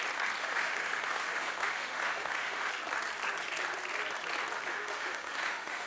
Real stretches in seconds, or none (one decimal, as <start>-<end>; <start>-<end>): 0.0-0.4; 2.7-4.7